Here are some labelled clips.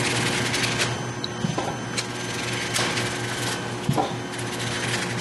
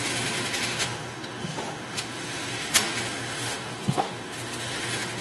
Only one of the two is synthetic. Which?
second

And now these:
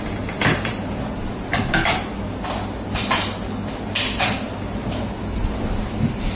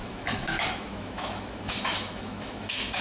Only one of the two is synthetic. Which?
second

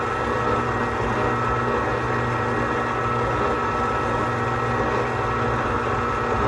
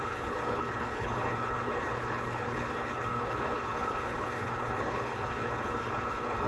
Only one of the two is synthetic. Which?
second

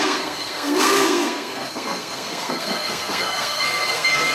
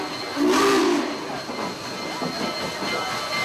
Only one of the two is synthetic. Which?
first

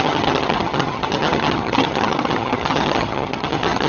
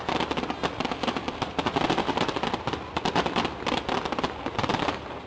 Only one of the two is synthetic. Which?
first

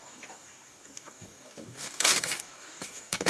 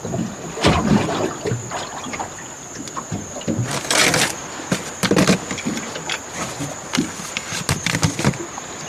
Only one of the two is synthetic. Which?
first